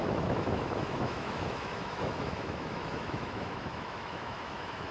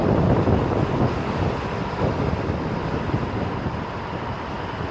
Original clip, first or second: second